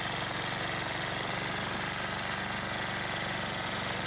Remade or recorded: recorded